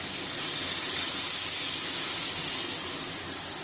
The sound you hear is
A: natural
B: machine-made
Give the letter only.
A